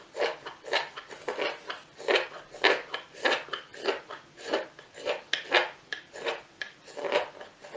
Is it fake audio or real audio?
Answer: real